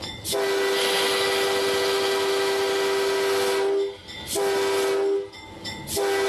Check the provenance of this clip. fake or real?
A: real